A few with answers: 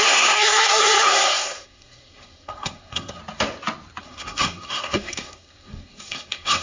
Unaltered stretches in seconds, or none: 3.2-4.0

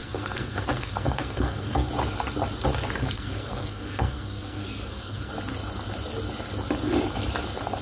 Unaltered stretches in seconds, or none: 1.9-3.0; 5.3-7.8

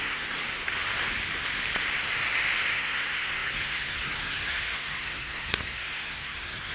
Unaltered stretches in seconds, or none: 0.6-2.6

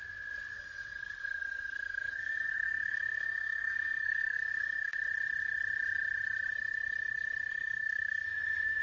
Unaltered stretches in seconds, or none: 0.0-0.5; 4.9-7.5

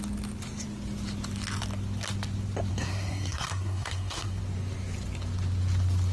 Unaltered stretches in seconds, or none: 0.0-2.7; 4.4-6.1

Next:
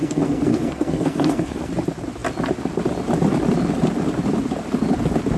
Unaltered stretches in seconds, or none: 1.7-5.4

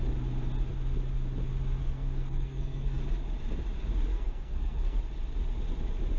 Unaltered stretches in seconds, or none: 0.0-1.8; 3.0-4.1; 5.0-6.2